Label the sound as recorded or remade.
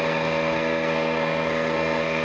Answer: remade